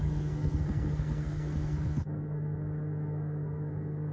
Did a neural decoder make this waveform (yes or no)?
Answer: yes